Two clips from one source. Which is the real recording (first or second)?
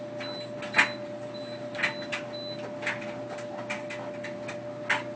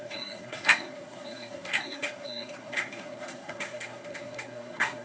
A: first